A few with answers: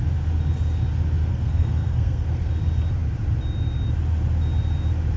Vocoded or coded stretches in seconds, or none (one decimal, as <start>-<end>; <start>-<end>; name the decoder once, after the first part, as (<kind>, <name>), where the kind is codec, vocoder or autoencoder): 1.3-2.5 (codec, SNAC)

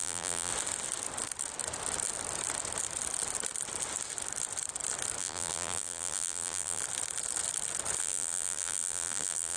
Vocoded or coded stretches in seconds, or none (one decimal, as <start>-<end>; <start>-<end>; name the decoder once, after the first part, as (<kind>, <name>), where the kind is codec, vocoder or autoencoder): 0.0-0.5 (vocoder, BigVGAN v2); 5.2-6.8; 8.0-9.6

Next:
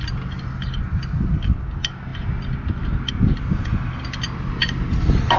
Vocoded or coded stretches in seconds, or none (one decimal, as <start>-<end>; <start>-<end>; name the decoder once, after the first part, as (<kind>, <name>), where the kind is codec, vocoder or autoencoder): none